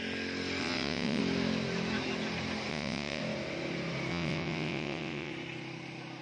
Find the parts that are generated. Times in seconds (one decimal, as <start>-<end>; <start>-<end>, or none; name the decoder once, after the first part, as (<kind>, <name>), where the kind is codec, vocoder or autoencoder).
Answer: 0.6-1.2 (vocoder, WaveNeXt); 2.7-3.2; 4.1-5.3

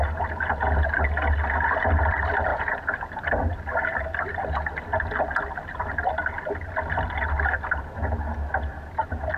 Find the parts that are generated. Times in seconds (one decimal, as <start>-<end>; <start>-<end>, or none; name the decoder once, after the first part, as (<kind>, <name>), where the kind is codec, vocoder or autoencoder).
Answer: 2.5-3.1 (vocoder, Vocos)

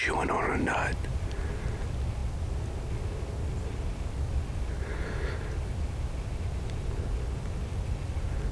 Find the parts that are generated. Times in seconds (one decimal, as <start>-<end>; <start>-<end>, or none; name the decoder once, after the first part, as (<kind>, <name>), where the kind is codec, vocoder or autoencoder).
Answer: none

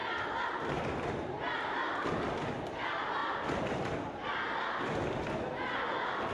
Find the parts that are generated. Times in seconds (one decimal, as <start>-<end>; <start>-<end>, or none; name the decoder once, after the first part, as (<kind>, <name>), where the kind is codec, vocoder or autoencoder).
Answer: none

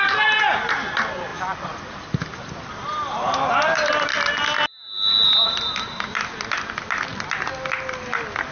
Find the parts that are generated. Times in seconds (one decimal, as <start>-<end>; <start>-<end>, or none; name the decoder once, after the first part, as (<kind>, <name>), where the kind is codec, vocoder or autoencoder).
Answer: none

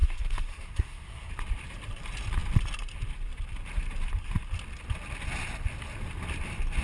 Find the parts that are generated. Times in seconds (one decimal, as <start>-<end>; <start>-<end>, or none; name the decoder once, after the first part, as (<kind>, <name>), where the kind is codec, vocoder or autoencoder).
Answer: 0.0-1.3 (codec, SNAC)

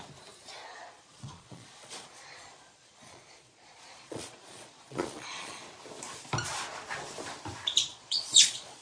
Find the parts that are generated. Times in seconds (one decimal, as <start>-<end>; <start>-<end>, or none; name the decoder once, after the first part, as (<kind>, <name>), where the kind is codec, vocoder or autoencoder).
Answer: 0.7-5.6 (vocoder, Vocos); 7.9-8.8

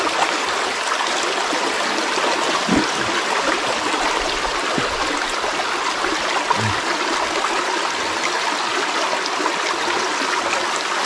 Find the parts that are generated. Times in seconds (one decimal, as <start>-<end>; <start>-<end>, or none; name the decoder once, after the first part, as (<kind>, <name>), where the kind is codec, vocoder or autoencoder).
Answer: none